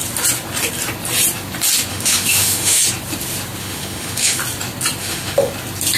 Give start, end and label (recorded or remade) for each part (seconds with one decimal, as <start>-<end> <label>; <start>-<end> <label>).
0.0-1.9 recorded; 1.9-2.8 remade; 2.8-3.6 recorded; 3.6-4.4 remade; 4.4-5.0 recorded; 5.0-5.5 remade; 5.5-6.0 recorded